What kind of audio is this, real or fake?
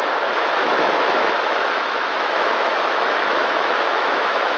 fake